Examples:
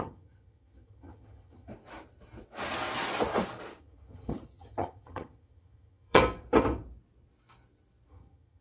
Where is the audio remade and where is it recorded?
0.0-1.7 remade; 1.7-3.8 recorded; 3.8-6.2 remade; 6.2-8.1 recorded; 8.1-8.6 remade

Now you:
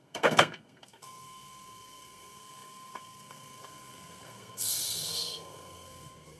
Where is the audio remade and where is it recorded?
0.0-6.4 remade

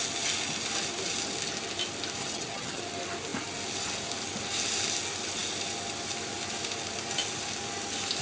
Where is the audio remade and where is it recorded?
0.0-2.2 recorded; 2.2-2.8 remade; 2.8-8.2 recorded

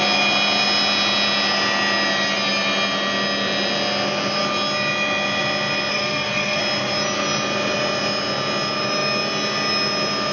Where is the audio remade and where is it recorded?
0.0-5.9 recorded; 5.9-6.6 remade; 6.6-10.3 recorded